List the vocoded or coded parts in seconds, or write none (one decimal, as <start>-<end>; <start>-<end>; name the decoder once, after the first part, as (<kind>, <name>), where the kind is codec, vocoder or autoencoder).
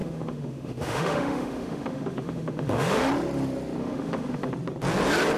0.0-3.1 (autoencoder, DAC-VAE); 3.8-4.5